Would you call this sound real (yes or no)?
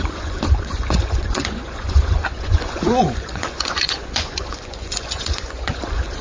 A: no